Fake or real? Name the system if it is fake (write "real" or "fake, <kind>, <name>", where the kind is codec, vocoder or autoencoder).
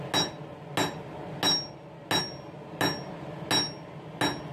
real